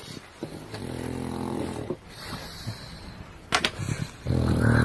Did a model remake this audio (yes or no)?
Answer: no